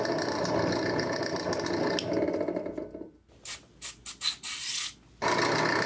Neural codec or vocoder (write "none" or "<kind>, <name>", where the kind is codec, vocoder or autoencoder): none